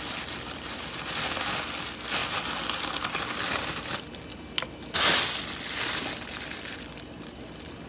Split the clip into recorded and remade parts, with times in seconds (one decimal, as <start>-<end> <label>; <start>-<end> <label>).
0.0-7.9 recorded